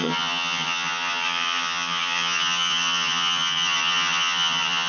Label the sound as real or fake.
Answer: fake